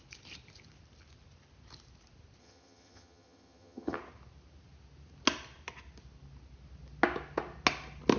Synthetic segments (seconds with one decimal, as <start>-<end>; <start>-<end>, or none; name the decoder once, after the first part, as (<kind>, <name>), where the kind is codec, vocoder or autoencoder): 2.4-4.0 (vocoder, HiFi-GAN)